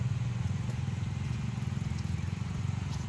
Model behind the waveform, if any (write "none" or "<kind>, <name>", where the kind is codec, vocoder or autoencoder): vocoder, Vocos